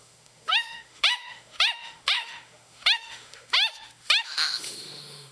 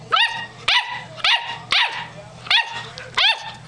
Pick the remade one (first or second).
first